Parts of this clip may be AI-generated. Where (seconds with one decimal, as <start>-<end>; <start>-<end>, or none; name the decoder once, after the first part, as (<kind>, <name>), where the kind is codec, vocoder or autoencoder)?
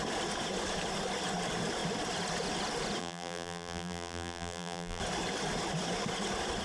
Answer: 3.0-5.0 (vocoder, BigVGAN v2)